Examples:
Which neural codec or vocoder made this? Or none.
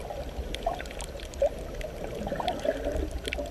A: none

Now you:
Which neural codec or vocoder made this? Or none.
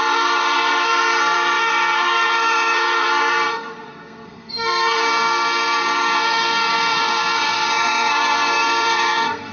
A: codec, SNAC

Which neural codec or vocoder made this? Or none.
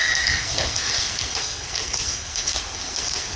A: codec, SNAC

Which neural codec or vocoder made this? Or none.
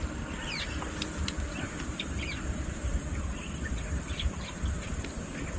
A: none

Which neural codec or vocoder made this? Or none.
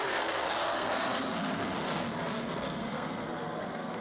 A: codec, SNAC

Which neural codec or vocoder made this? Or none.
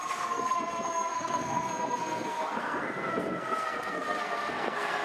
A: codec, SNAC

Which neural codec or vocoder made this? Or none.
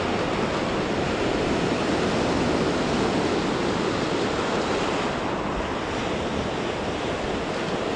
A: none